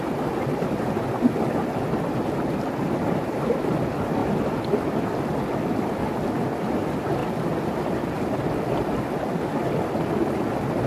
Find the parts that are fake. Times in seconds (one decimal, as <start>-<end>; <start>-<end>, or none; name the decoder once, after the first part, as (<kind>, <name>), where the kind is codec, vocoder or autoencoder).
none